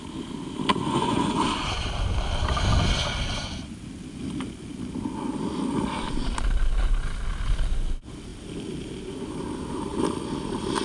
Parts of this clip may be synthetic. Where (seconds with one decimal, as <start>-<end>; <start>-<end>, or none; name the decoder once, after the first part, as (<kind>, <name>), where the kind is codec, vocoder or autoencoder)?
0.7-1.4 (vocoder, Vocos)

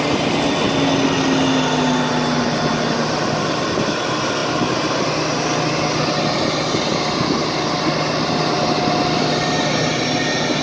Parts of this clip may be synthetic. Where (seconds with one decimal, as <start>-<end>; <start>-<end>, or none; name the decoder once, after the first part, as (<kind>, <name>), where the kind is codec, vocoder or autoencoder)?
none

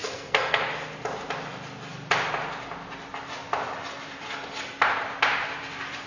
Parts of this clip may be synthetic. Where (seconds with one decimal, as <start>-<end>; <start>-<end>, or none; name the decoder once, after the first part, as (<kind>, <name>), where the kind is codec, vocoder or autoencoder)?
0.0-0.6 (codec, SNAC)

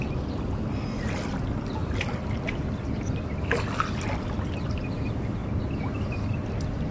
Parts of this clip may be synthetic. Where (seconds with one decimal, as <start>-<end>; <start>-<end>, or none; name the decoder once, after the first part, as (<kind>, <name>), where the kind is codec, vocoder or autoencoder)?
none

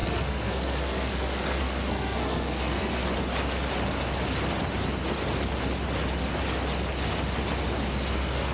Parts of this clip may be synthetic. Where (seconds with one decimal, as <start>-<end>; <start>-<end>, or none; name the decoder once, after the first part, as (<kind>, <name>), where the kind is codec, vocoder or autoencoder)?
0.0-3.0 (codec, SNAC); 8.1-8.5

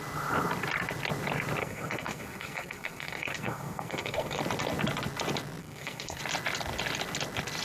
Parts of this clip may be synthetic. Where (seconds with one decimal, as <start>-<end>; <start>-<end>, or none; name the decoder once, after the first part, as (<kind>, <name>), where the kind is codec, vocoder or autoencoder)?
1.6-4.4 (codec, SNAC); 5.6-6.2

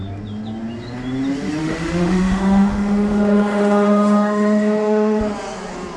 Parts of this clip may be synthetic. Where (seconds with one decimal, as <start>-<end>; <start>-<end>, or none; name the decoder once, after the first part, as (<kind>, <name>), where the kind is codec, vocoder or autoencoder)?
1.6-5.2 (autoencoder, DAC-VAE)